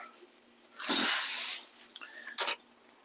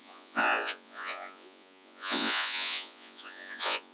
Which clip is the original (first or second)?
first